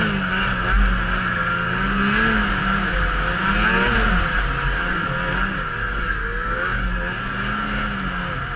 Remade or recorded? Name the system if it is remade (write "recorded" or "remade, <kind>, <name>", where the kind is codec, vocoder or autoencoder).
recorded